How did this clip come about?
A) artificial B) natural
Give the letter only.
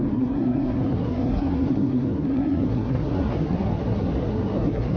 A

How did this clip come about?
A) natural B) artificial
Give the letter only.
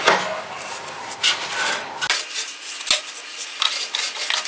A